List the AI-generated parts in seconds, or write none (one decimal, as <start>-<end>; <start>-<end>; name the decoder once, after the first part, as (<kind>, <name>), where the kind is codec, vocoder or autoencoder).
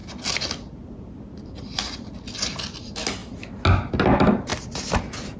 none